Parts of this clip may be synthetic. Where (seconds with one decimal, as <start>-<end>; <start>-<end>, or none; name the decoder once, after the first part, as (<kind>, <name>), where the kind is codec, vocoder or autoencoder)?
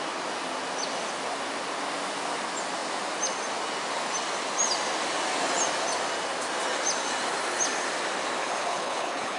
8.4-9.4 (codec, HILCodec)